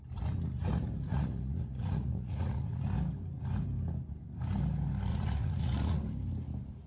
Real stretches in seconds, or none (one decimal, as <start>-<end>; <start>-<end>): 0.0-1.1; 2.8-5.1; 6.0-6.9